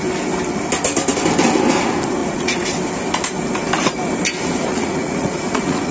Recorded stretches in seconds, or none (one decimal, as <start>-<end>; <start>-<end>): 0.0-2.2; 2.7-4.7